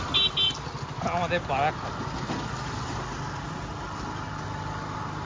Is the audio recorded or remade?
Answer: recorded